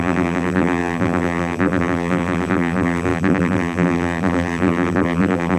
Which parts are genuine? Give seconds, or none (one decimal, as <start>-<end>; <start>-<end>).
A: none